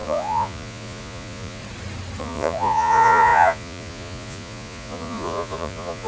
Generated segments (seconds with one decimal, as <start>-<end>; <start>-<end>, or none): 0.0-1.6; 2.2-6.1